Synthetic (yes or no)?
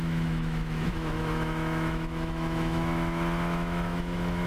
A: yes